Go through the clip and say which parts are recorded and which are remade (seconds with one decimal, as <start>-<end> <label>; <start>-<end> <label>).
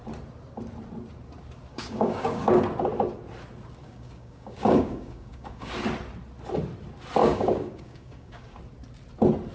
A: 0.0-1.7 recorded; 1.7-2.6 remade; 2.6-3.8 recorded; 3.8-5.7 remade; 5.7-7.2 recorded; 7.2-8.6 remade; 8.6-9.5 recorded